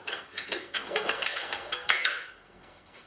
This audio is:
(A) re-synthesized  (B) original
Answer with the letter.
A